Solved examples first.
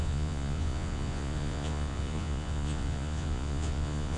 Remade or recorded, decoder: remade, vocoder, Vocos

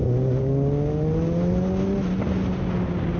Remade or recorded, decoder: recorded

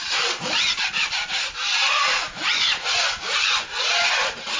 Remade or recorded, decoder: recorded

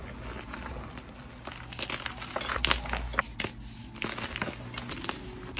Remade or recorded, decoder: recorded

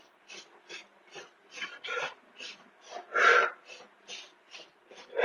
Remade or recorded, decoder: recorded